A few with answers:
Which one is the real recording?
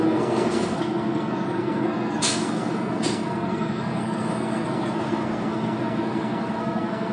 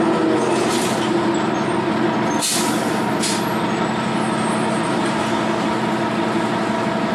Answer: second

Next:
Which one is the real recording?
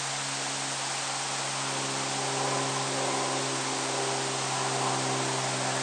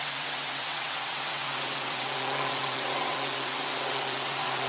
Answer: first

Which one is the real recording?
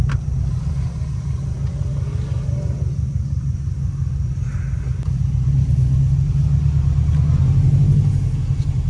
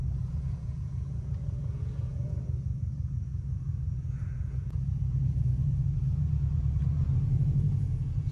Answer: first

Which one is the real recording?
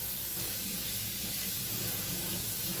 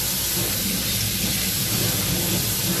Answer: second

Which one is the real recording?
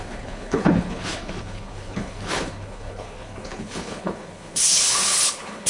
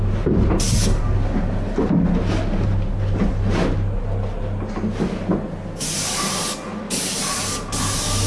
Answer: second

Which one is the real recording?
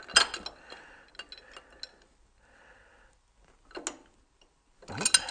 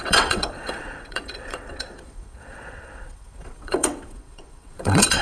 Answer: first